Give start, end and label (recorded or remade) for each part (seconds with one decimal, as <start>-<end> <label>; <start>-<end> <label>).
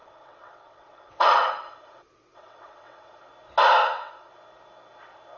0.0-3.2 remade; 3.2-3.8 recorded; 3.8-4.3 remade; 4.3-5.4 recorded